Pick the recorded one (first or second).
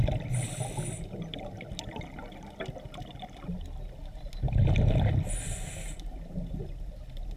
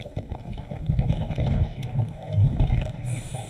first